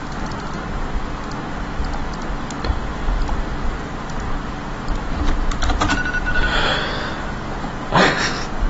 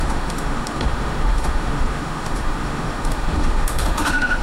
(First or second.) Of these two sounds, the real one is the first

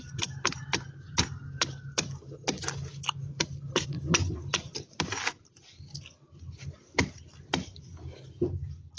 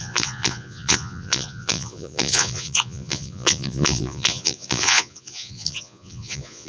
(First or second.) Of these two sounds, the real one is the first